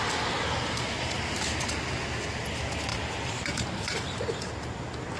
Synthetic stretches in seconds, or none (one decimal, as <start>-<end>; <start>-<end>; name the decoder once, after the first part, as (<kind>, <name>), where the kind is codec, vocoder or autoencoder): 2.9-4.5 (vocoder, BigVGAN v2)